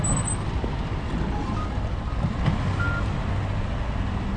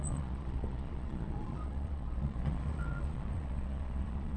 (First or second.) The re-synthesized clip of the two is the second